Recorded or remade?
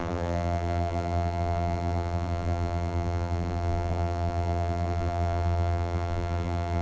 remade